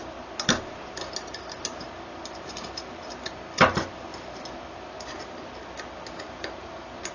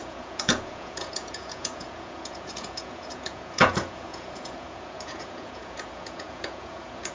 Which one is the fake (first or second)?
second